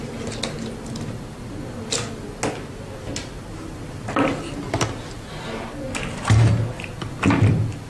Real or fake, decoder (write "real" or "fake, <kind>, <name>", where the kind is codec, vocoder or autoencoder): real